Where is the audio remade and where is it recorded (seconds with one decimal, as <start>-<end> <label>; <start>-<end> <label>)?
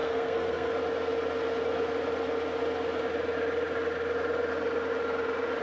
0.0-0.7 remade; 0.7-5.6 recorded